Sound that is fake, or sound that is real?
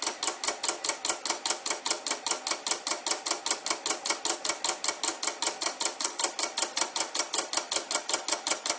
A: real